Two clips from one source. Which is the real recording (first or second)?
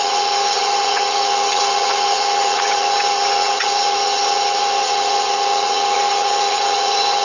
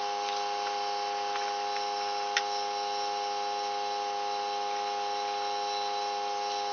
second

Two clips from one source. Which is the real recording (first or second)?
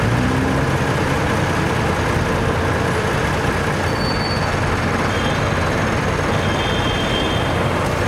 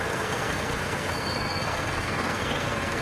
first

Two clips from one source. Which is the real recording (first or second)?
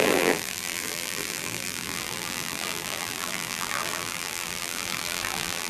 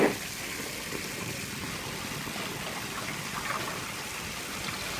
second